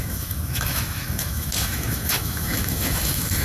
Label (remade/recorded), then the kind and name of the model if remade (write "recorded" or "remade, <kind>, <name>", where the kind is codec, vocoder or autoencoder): remade, autoencoder, DAC-VAE